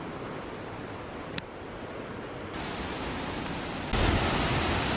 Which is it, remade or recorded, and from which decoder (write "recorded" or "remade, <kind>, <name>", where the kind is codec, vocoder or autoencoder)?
recorded